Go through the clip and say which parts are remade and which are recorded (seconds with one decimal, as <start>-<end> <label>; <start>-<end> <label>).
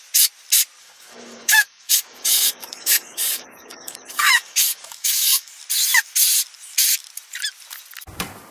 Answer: 0.0-0.8 recorded; 0.8-5.5 remade; 5.5-8.5 recorded